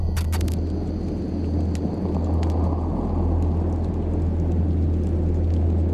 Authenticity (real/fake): real